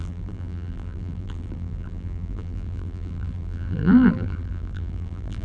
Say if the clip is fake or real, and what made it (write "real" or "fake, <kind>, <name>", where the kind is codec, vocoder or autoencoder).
fake, vocoder, BigVGAN v2